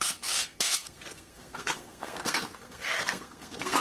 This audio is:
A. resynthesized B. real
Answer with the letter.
A